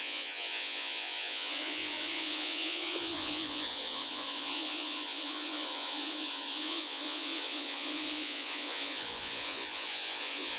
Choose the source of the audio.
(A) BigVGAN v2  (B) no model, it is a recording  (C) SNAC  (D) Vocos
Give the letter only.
D